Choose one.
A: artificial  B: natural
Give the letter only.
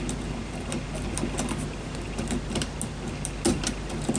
B